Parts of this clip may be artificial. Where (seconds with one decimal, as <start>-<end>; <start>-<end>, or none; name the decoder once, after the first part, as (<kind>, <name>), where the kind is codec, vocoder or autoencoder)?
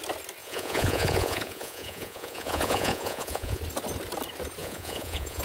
0.4-3.6 (vocoder, Vocos); 4.6-5.4